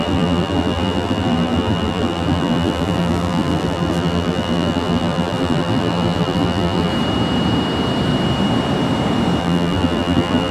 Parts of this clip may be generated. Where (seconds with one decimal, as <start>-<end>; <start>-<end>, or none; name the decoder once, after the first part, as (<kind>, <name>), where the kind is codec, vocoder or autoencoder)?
0.0-6.9 (vocoder, BigVGAN v2); 9.4-10.5